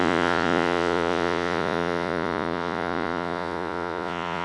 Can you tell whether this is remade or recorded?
remade